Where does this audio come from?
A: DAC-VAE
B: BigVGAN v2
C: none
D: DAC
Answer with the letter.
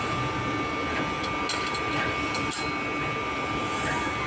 C